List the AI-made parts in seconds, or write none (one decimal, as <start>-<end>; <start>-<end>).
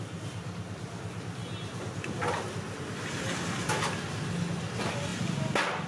none